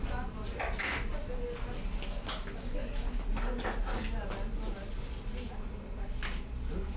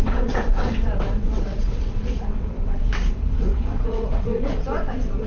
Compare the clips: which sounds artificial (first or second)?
second